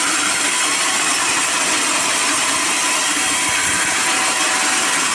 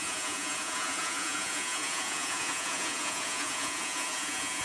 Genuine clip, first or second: first